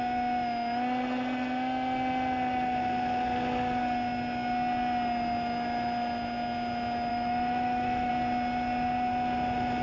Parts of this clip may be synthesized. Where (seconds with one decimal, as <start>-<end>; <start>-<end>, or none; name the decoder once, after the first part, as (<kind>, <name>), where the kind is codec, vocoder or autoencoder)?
7.1-8.1 (autoencoder, DAC-VAE)